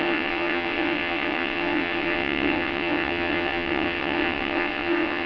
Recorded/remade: remade